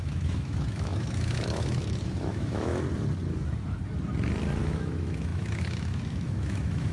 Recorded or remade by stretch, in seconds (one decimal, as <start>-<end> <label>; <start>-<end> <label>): 0.0-2.7 remade; 2.7-4.6 recorded; 4.6-6.9 remade